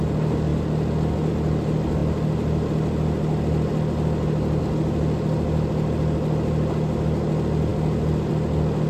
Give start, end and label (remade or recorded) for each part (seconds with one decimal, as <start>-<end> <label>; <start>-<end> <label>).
0.0-8.9 recorded